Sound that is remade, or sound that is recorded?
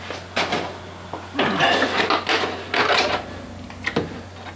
recorded